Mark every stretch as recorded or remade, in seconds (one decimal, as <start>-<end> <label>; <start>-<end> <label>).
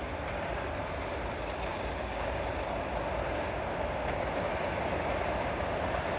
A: 0.0-1.7 recorded; 1.7-2.4 remade; 2.4-6.2 recorded